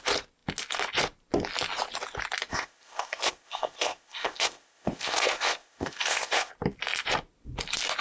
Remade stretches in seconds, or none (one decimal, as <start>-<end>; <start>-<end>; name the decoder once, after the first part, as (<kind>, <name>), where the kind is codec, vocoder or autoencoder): 2.5-6.5 (codec, ZipCodec)